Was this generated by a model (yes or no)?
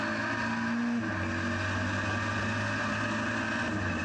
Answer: no